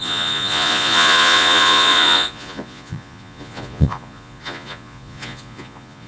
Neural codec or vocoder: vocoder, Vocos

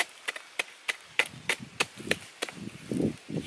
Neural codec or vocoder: none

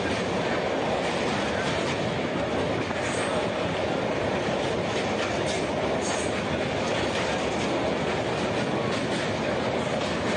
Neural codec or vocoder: none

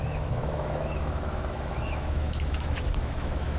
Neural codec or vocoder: autoencoder, DAC-VAE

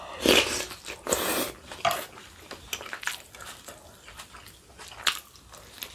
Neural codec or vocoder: none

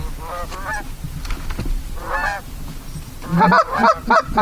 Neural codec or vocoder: none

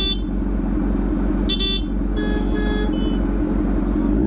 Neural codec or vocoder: none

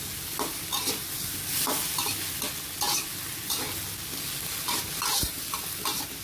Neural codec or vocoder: none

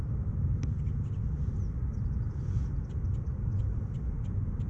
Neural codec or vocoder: none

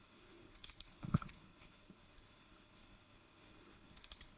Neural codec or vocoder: codec, HILCodec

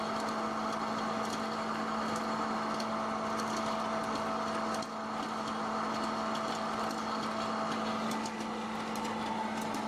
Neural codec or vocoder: none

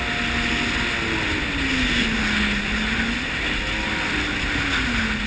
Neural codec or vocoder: none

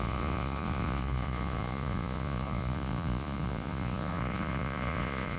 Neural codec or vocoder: vocoder, Vocos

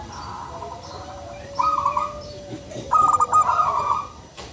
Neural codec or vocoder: vocoder, BigVGAN v2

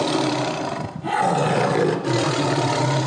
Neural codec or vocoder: none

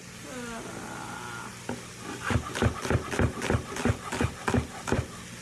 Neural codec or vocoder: none